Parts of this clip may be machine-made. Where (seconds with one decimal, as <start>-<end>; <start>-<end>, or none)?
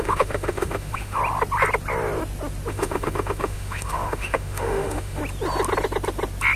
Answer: 0.0-1.2; 2.7-5.2